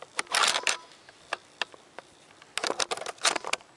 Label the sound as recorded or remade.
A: recorded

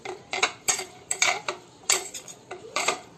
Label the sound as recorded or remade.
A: remade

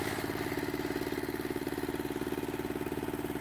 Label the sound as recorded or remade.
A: recorded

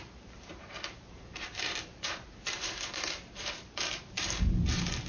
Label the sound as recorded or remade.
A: remade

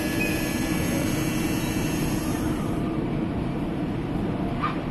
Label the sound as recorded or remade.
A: remade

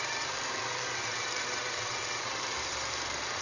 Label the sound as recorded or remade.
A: remade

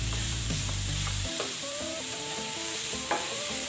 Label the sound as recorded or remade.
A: remade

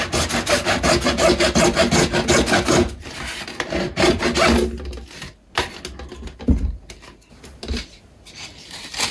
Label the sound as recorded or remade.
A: recorded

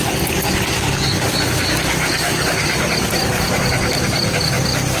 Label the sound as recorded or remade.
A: recorded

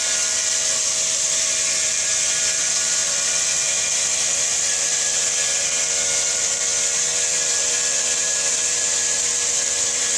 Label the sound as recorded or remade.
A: remade